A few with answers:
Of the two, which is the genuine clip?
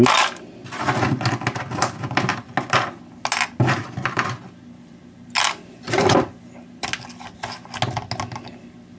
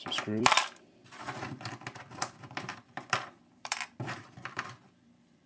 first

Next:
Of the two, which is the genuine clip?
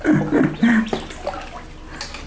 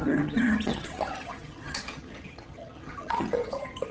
first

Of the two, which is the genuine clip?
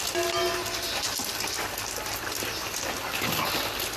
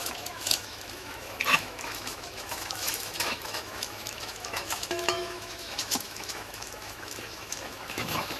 first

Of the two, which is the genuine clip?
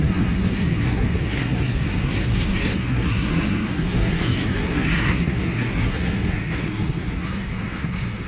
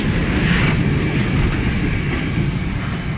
second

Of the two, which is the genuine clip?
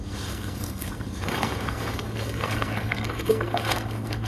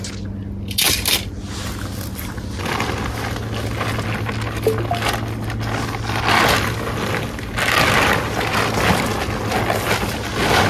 second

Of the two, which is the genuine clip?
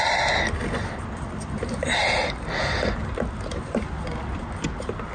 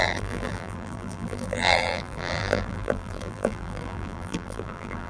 first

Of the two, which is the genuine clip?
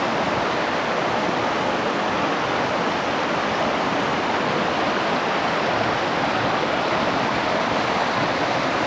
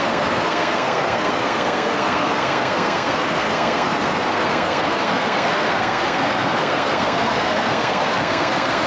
first